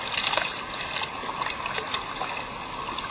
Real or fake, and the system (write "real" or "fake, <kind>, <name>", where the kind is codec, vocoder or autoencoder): real